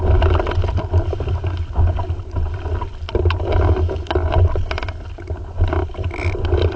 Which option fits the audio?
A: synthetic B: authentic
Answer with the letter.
B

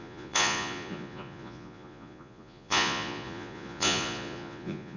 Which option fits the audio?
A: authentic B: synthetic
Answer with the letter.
B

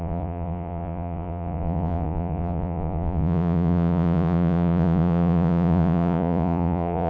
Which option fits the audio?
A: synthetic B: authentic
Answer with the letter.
A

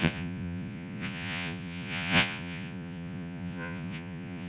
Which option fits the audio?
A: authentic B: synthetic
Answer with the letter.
B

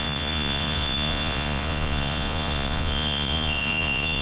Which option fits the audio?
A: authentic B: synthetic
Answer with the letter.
B